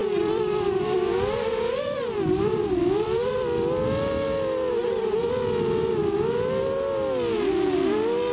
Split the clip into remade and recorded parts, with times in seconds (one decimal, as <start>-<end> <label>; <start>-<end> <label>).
0.0-3.3 remade; 3.3-8.3 recorded